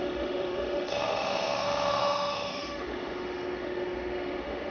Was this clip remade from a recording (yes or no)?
yes